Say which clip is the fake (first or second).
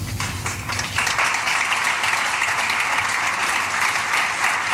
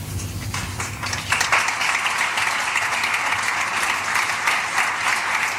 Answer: first